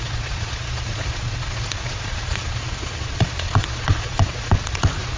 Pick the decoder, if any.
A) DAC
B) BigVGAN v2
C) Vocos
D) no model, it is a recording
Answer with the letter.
C